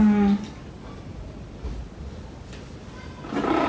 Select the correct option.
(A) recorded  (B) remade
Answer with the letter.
A